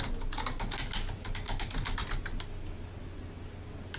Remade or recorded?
recorded